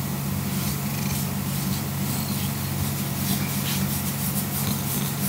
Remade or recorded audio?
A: recorded